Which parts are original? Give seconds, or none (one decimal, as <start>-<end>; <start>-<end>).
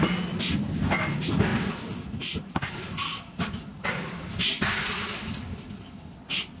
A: 0.0-6.6